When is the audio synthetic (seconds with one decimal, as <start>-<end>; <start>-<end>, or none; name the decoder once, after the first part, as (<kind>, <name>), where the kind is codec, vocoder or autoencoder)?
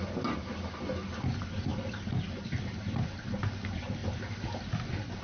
none